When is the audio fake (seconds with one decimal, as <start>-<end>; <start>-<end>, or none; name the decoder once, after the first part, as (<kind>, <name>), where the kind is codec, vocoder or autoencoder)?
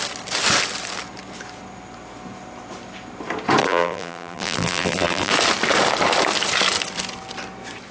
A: 3.6-5.3 (vocoder, BigVGAN v2)